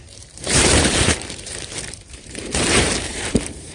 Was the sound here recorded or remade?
remade